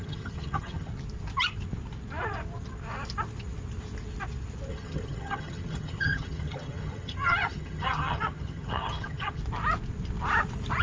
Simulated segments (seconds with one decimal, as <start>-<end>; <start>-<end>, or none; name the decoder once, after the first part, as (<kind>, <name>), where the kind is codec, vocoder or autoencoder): 0.0-0.9 (vocoder, HiFi-GAN); 4.7-9.4